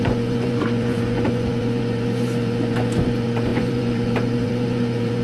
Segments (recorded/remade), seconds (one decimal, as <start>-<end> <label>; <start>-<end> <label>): 0.0-5.2 remade